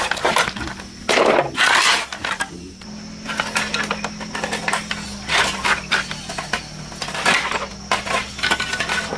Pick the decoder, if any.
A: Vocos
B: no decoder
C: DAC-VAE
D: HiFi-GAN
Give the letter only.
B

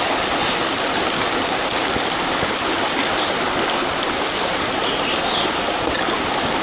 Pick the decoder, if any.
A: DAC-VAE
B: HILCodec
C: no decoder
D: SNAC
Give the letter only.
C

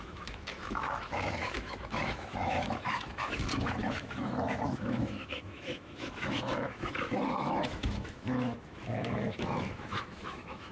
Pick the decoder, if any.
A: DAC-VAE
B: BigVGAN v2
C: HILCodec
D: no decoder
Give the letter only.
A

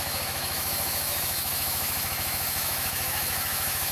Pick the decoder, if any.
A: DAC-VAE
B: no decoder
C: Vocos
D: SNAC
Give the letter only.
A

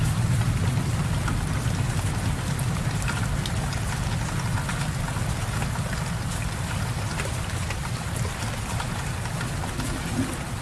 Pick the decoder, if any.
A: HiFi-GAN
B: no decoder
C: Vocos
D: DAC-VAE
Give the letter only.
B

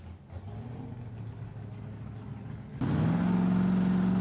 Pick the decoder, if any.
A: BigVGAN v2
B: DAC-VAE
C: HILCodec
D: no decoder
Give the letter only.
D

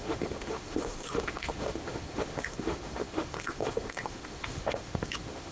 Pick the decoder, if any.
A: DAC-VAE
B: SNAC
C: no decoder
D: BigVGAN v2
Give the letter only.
A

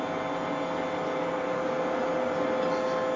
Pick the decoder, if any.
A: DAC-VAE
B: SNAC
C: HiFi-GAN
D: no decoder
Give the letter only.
D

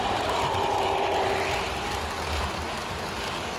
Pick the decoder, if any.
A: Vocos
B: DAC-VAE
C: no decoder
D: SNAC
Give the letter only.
C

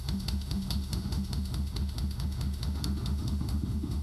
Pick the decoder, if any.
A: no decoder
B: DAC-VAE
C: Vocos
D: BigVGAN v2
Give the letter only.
B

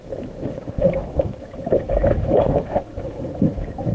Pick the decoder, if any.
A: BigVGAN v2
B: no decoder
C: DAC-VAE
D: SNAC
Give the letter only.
C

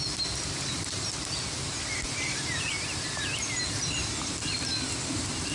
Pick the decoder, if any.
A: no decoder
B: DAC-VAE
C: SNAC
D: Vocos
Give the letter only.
A